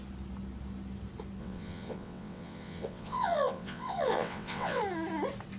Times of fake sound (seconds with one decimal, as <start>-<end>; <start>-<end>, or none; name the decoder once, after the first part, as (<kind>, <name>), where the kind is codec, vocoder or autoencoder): 1.4-4.8 (vocoder, WaveNeXt)